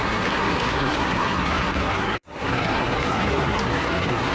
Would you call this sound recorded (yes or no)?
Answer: no